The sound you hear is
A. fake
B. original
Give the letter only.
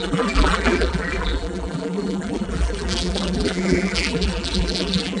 A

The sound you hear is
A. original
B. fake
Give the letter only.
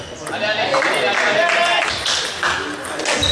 A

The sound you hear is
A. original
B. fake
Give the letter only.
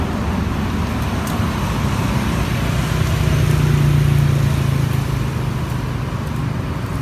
A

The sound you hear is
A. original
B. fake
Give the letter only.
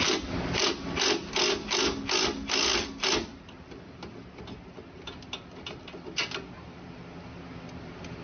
A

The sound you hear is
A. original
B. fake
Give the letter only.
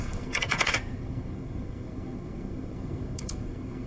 B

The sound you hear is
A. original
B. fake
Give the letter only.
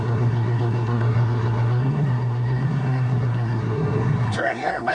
B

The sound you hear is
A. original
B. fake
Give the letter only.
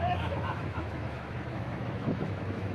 B